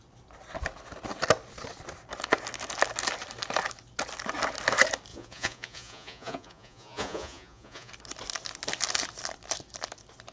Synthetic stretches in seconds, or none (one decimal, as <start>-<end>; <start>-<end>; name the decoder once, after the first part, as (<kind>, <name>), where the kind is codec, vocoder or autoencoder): 5.1-7.9 (vocoder, Vocos)